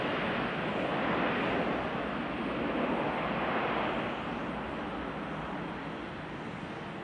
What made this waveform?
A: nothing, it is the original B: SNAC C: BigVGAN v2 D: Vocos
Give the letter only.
A